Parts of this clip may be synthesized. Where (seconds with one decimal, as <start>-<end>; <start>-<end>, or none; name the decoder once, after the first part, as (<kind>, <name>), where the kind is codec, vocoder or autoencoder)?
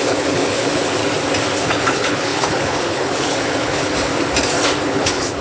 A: 0.0-1.0 (codec, HILCodec); 1.6-4.1; 4.9-5.4